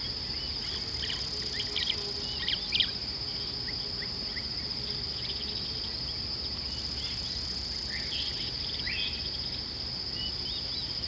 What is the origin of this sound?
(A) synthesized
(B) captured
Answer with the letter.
B